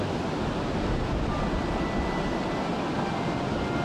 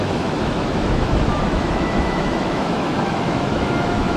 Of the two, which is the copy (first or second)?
second